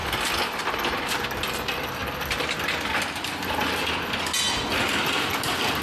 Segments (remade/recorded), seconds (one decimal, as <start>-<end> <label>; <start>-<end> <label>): 0.0-0.6 remade; 0.6-5.8 recorded

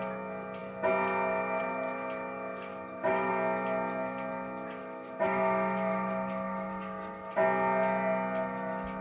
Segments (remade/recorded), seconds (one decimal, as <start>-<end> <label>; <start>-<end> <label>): 0.0-2.7 recorded; 2.7-3.3 remade; 3.3-4.8 recorded; 4.8-7.3 remade; 7.3-9.0 recorded